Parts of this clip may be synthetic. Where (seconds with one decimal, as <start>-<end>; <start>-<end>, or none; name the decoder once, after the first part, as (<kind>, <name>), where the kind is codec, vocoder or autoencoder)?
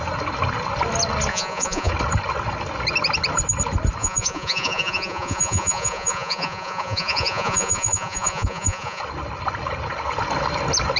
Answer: 1.3-1.9 (vocoder, Vocos); 4.0-9.0